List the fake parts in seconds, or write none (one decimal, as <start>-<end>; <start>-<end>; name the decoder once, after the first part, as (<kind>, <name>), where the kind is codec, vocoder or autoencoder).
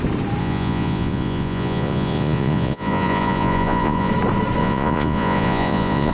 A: 0.4-4.1 (vocoder, Vocos); 4.6-6.1